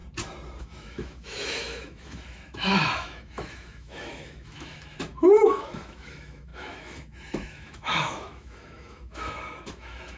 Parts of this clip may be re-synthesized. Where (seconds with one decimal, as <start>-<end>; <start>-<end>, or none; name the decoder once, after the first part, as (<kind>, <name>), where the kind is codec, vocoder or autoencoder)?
0.6-10.2 (autoencoder, DAC-VAE)